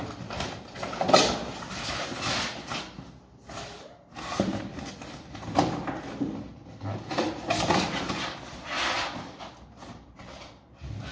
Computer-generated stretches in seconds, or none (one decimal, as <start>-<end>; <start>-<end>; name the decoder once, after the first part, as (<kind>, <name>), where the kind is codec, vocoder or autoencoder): none